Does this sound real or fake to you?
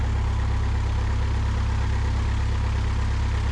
real